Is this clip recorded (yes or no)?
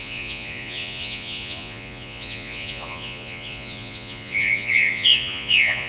no